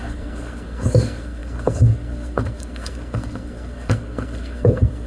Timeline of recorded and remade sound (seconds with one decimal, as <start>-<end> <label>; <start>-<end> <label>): 0.0-5.1 remade

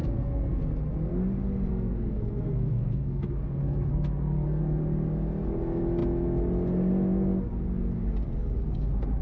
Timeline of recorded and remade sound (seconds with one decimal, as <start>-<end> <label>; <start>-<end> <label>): 0.0-0.6 remade; 0.6-1.7 recorded; 1.7-4.6 remade; 4.6-9.2 recorded

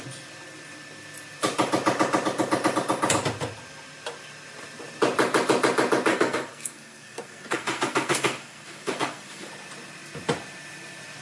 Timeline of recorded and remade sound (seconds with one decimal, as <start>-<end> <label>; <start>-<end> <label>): 0.0-6.1 recorded; 6.1-9.5 remade; 9.5-11.2 recorded

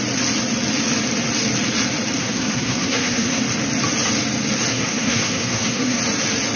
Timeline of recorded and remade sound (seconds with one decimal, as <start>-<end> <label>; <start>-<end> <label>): 0.0-2.2 recorded; 2.2-3.4 remade; 3.4-4.7 recorded; 4.7-6.0 remade; 6.0-6.6 recorded

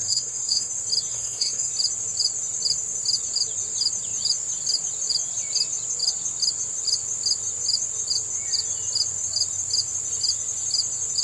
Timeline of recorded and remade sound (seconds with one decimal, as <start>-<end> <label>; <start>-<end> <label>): 0.0-0.7 remade; 0.7-1.1 recorded; 1.1-1.7 remade; 1.7-11.2 recorded